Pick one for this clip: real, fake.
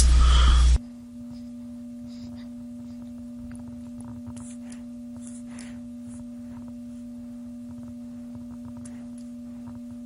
real